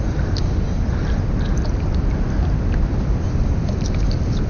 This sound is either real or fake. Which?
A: real